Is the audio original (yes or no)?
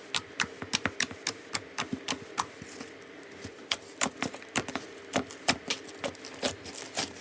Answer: yes